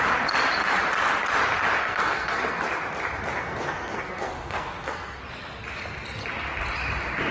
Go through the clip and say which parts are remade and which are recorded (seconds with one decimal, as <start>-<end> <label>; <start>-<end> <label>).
0.0-1.8 recorded; 1.8-2.6 remade; 2.6-3.3 recorded; 3.3-5.2 remade; 5.2-7.3 recorded